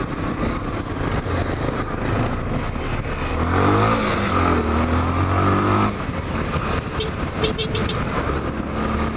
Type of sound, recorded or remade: recorded